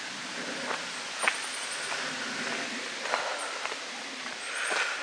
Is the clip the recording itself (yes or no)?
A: yes